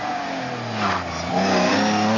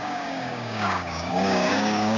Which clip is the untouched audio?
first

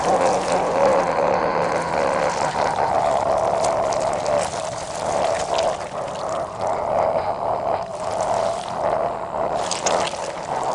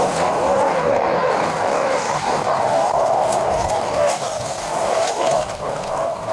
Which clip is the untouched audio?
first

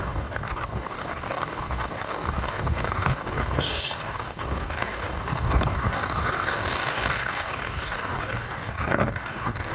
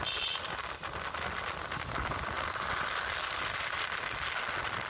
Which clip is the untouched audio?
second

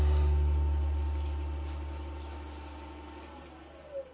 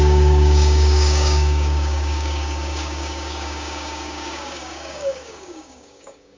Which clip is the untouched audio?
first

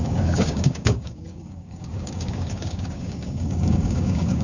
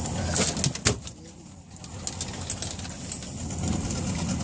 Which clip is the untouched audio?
second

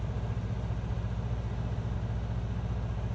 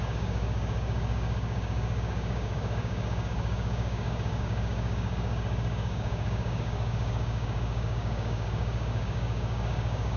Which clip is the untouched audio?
first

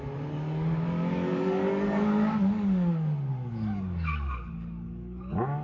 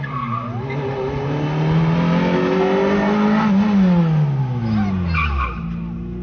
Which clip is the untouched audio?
second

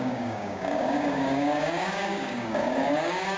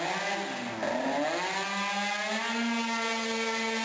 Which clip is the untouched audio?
second